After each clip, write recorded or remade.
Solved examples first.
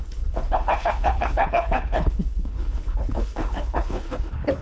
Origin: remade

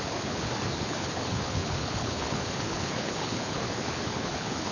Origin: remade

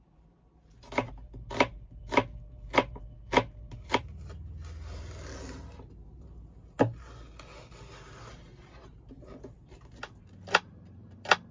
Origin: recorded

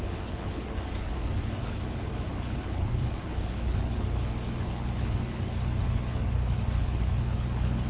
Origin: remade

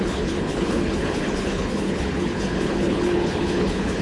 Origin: remade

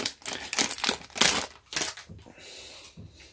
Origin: recorded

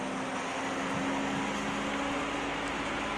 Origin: recorded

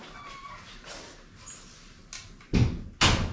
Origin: recorded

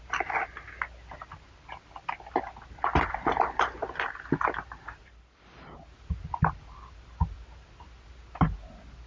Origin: recorded